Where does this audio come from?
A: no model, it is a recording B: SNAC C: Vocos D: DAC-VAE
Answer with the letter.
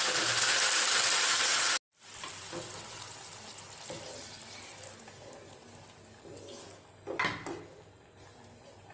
A